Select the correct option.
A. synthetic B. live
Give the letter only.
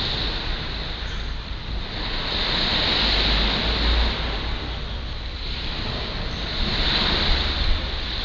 B